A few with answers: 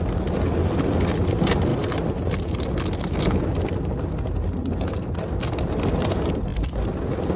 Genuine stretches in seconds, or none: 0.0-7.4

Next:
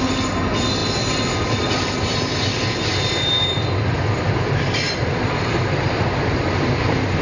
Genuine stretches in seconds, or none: 0.0-7.2

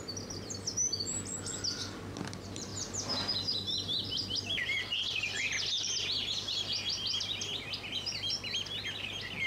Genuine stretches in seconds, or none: 0.0-9.5

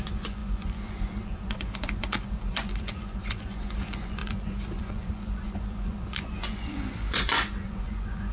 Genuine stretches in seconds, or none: none